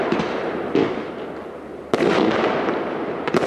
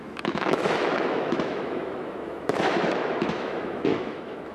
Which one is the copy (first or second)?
second